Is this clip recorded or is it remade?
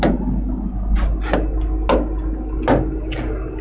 recorded